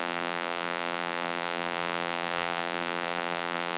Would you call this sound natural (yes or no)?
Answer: no